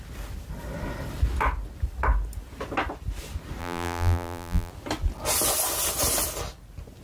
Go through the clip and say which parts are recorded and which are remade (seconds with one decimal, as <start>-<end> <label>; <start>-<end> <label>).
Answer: 0.0-3.6 recorded; 3.6-4.7 remade; 4.7-7.0 recorded